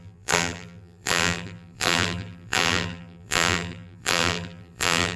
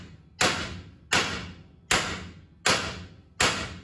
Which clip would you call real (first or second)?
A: second